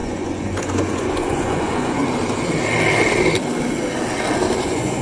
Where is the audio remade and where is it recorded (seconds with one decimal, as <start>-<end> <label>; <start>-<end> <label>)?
0.0-2.0 remade; 2.0-4.6 recorded; 4.6-5.0 remade